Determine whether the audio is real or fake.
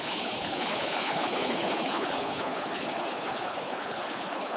fake